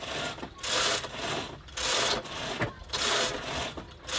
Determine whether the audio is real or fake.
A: real